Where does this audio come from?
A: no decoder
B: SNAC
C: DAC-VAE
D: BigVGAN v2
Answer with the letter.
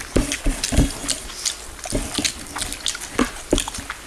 A